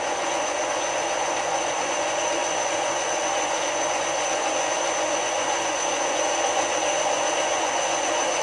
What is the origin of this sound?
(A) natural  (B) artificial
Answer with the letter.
B